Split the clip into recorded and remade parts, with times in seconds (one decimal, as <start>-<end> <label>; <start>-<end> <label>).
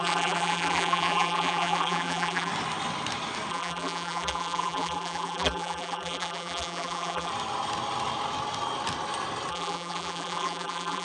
0.0-2.5 remade; 2.5-3.5 recorded; 3.5-7.3 remade; 7.3-9.5 recorded; 9.5-11.0 remade